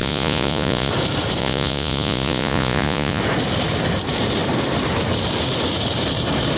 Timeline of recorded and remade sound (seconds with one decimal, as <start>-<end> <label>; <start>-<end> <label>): 0.0-0.9 remade; 0.9-1.4 recorded; 1.4-3.2 remade; 3.2-6.6 recorded